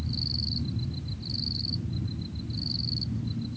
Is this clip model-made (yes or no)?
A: no